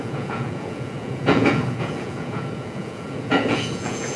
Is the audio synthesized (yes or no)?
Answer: yes